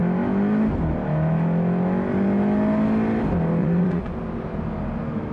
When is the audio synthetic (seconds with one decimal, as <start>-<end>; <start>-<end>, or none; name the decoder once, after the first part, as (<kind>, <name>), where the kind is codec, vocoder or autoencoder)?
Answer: 3.6-4.1 (vocoder, Vocos)